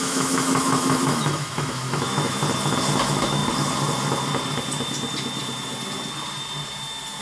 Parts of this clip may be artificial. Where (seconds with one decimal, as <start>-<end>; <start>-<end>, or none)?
0.0-2.4; 3.0-3.4